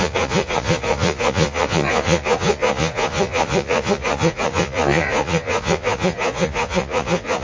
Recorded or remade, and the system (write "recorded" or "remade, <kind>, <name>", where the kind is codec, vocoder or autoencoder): remade, vocoder, Vocos